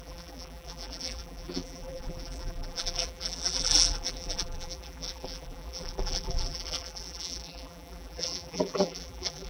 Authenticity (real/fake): fake